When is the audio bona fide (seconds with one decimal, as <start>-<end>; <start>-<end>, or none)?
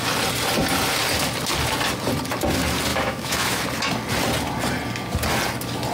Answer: 0.0-2.9; 3.6-5.9